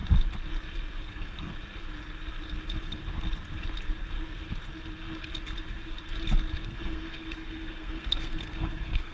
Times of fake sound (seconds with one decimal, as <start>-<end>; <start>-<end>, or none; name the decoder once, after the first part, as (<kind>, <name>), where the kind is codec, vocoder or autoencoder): 1.1-1.5 (codec, SNAC); 6.6-9.1